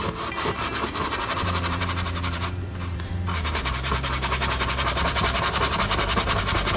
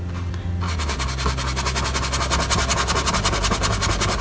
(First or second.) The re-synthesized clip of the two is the first